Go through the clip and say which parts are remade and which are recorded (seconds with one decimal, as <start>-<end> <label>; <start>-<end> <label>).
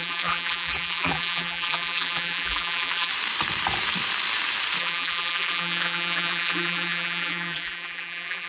0.0-3.1 remade; 3.1-4.8 recorded; 4.8-8.5 remade